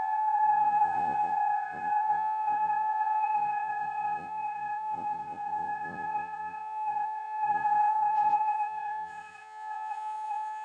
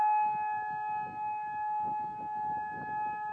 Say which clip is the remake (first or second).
first